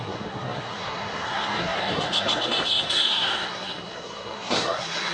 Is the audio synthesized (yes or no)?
yes